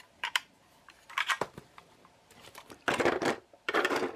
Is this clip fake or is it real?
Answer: fake